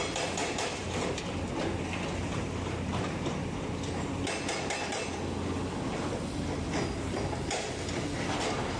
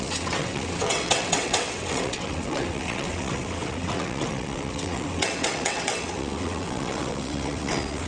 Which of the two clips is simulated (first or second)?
second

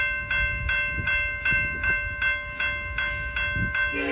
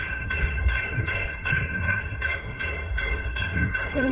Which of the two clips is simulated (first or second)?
second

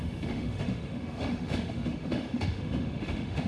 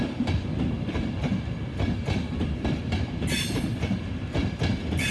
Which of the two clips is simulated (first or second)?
first